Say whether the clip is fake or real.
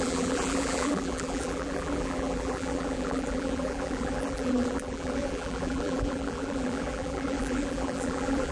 fake